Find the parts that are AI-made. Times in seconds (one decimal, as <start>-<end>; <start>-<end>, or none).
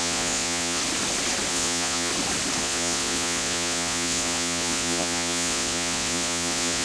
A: 0.0-0.8; 1.5-2.1; 2.6-6.8